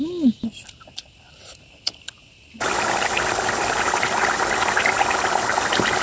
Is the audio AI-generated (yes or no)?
no